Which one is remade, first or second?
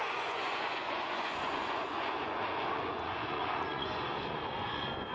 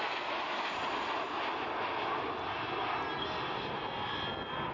first